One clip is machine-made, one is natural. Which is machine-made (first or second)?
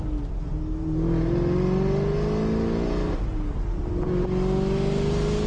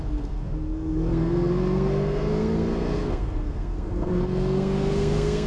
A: second